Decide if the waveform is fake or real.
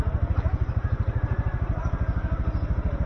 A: real